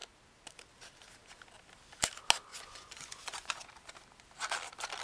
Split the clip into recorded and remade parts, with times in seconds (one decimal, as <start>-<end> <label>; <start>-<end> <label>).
0.0-2.5 recorded; 2.5-3.6 remade; 3.6-5.0 recorded